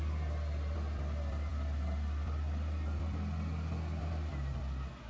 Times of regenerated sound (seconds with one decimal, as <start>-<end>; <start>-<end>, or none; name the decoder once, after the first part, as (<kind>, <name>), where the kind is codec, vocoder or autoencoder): none